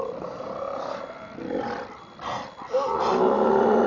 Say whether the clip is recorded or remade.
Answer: recorded